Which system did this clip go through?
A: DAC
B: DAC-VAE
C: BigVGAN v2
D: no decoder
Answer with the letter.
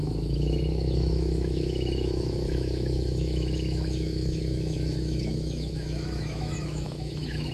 B